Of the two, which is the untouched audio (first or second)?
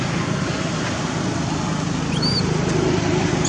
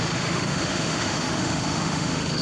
first